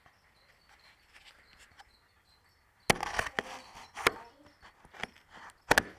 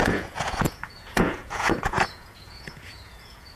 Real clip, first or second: first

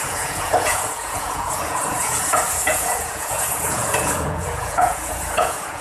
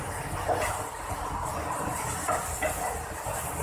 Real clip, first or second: second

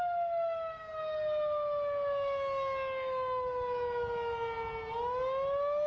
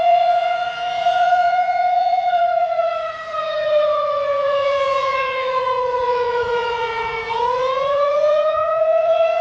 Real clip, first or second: first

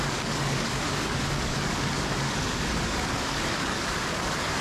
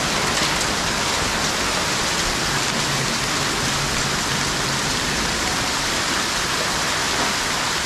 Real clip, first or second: second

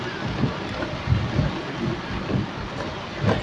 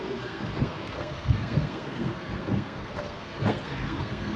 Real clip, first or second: first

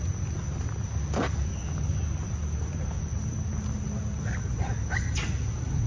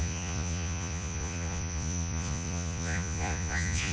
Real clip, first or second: first